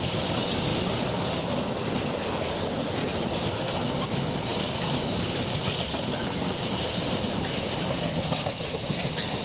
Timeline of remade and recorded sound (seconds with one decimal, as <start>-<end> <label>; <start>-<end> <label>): 0.0-9.4 recorded